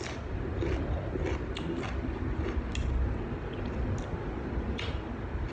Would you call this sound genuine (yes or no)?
yes